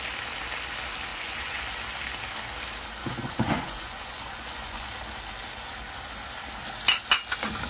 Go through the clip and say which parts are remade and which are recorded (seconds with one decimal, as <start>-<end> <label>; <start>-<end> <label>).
0.0-1.1 recorded; 1.1-1.6 remade; 1.6-3.0 recorded; 3.0-4.9 remade; 4.9-7.7 recorded